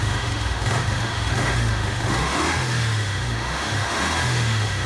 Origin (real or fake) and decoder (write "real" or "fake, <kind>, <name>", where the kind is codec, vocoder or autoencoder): fake, autoencoder, DAC-VAE